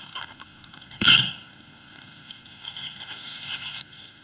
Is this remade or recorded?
remade